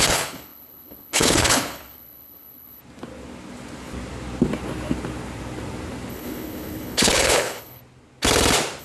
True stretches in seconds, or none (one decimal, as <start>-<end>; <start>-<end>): 2.8-6.1; 7.8-8.8